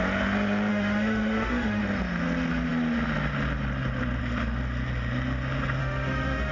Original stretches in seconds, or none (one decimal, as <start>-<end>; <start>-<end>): 0.0-0.7; 1.8-5.8